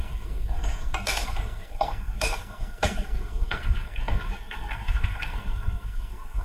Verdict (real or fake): fake